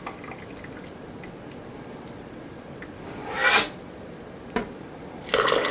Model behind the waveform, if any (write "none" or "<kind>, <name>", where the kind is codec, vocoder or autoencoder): none